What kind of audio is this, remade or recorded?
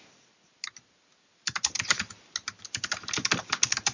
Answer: recorded